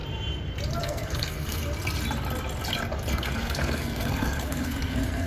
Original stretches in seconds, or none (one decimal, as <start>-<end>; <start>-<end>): 0.0-0.8; 1.6-3.1